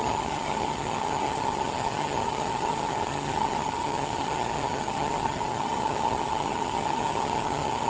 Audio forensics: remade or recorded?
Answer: remade